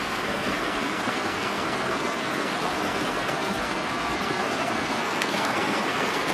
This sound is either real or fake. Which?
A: fake